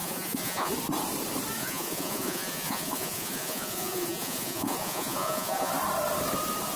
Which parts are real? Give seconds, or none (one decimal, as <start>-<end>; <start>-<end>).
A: 0.7-1.6; 5.7-6.8